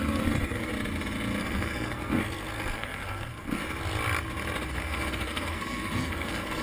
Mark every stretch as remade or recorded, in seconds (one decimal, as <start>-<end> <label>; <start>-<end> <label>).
0.0-0.7 remade; 0.7-1.4 recorded; 1.4-3.6 remade; 3.6-4.7 recorded; 4.7-6.6 remade